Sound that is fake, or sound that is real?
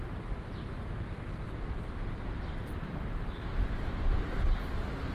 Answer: real